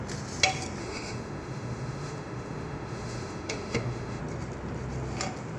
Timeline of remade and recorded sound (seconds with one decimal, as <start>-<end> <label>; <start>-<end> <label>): 0.0-0.8 recorded; 0.8-4.2 remade; 4.2-5.6 recorded